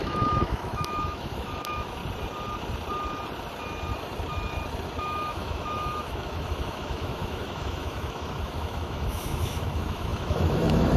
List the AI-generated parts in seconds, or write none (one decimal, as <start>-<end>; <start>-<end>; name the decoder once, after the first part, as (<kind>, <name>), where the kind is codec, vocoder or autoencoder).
0.0-2.0 (autoencoder, DAC-VAE); 5.0-11.0

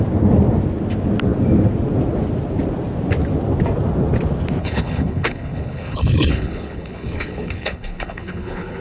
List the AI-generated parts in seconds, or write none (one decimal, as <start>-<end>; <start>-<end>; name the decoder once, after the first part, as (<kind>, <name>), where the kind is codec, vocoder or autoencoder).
4.6-8.8 (codec, HILCodec)